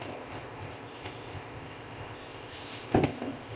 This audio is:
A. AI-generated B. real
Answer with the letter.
A